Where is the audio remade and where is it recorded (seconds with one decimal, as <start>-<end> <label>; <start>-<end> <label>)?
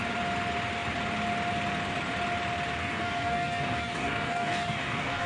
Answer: 0.0-2.8 recorded; 2.8-5.3 remade